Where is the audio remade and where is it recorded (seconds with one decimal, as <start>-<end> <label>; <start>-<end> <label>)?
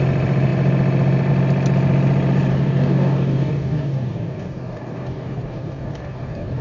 0.0-2.5 recorded; 2.5-6.6 remade